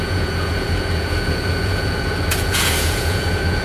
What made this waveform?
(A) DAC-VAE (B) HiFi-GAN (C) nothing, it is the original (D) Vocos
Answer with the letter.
D